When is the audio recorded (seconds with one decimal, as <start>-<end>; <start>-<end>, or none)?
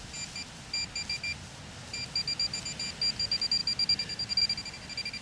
0.0-5.2